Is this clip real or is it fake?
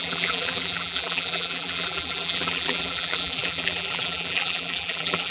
fake